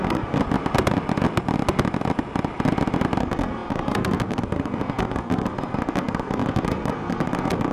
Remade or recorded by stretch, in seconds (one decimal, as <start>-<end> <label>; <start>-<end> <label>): 0.0-0.4 remade; 0.4-3.2 recorded; 3.2-7.7 remade